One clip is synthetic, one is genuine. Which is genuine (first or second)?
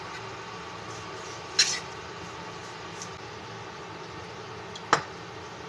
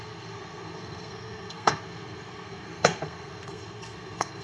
first